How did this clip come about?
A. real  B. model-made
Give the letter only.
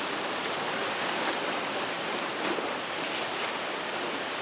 A